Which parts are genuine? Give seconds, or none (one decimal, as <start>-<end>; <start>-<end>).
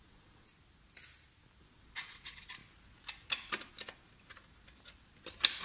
0.5-1.6; 2.6-5.6